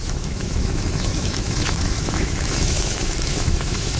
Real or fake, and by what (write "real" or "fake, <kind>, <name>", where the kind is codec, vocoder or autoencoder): fake, autoencoder, DAC-VAE